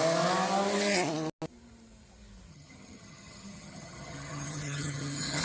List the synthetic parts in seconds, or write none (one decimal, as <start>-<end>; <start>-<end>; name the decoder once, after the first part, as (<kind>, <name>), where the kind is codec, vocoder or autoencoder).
2.5-5.4 (vocoder, HiFi-GAN)